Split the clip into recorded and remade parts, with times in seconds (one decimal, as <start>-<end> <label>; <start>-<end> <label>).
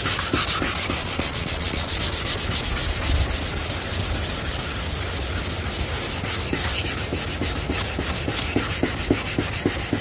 0.0-1.0 recorded; 1.0-2.0 remade; 2.0-10.0 recorded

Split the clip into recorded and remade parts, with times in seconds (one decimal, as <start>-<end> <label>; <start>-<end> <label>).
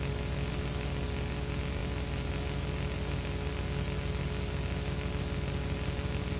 0.0-6.4 recorded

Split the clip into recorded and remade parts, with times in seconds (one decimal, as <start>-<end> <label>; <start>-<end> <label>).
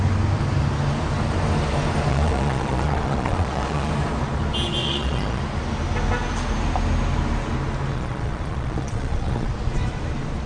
0.0-2.1 recorded; 2.1-3.9 remade; 3.9-4.8 recorded; 4.8-5.4 remade; 5.4-7.9 recorded; 7.9-9.5 remade; 9.5-10.5 recorded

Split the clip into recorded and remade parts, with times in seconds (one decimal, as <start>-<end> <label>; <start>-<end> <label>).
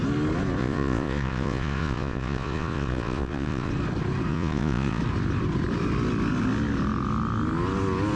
0.0-0.6 recorded; 0.6-3.7 remade; 3.7-4.3 recorded; 4.3-5.0 remade; 5.0-8.2 recorded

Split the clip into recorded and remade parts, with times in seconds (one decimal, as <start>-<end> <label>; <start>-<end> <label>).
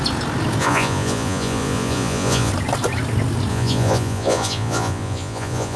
0.0-0.6 recorded; 0.6-2.5 remade; 2.5-3.5 recorded; 3.5-5.8 remade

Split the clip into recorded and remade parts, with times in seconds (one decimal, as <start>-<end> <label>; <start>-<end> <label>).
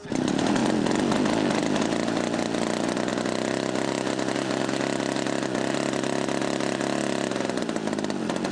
0.0-8.5 recorded